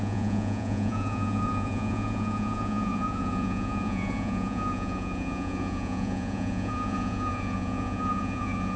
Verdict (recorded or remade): remade